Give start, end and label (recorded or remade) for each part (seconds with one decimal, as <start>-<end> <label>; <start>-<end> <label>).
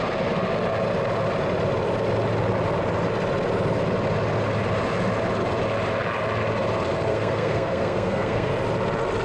0.0-7.1 recorded; 7.1-8.5 remade; 8.5-9.2 recorded